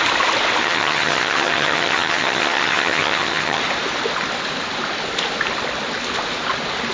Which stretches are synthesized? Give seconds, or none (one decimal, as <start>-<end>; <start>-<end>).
0.6-3.6